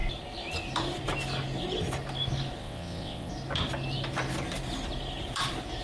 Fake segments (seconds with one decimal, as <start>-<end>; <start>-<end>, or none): 2.6-3.3